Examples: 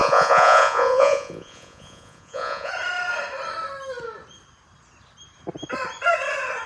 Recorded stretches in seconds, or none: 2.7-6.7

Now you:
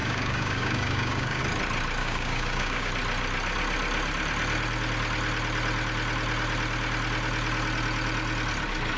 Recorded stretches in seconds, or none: 1.4-2.0; 2.9-9.0

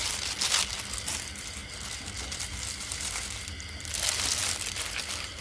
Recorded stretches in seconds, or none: 1.6-2.2

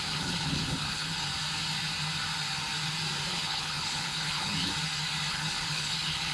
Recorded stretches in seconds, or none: 1.3-3.3; 4.7-5.3